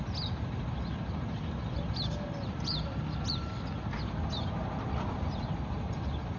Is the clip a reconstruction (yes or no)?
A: no